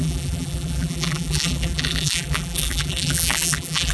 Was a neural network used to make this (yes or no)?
yes